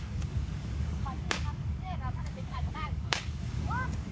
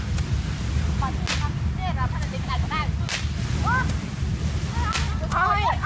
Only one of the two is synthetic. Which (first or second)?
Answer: first